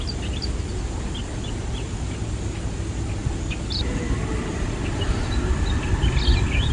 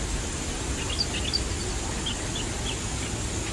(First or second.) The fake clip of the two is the first